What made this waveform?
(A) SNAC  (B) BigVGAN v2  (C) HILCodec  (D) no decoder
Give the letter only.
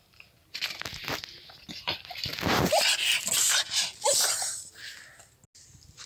D